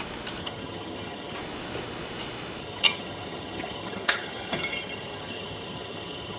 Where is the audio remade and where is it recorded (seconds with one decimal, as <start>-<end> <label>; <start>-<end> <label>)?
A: 0.0-0.4 recorded; 0.4-1.4 remade; 1.4-2.6 recorded; 2.6-6.4 remade